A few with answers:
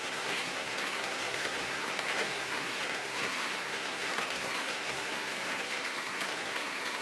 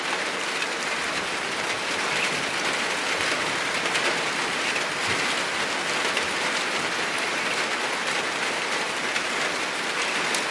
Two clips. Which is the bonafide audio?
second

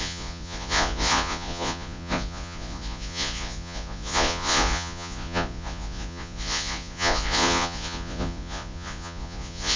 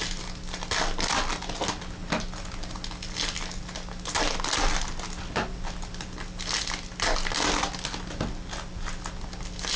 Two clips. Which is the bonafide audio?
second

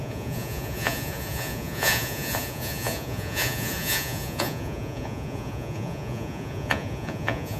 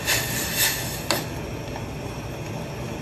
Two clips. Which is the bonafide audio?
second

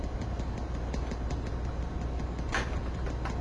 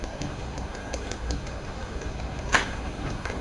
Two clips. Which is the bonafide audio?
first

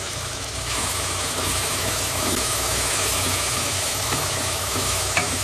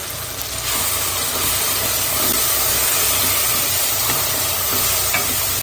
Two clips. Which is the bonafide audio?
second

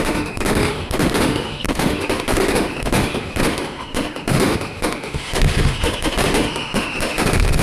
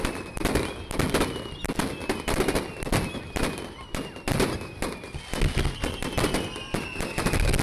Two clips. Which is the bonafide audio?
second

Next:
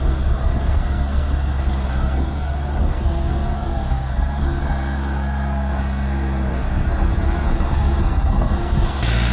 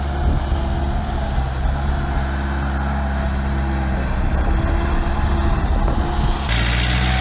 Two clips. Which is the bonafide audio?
second